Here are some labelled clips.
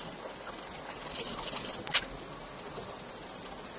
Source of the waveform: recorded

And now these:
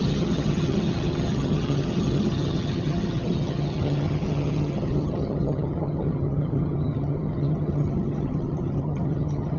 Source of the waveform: remade